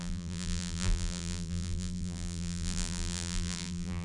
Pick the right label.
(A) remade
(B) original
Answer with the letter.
A